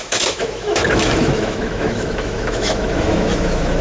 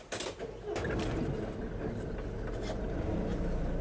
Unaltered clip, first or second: second